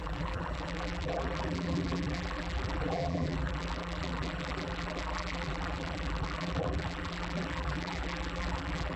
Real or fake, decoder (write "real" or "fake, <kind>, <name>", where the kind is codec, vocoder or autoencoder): fake, vocoder, BigVGAN v2